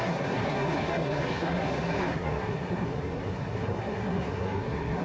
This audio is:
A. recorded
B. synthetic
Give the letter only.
B